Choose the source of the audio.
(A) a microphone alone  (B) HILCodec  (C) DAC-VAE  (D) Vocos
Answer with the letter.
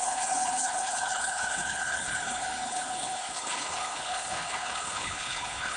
B